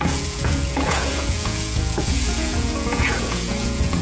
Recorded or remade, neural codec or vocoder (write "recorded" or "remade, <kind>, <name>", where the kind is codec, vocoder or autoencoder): remade, vocoder, Vocos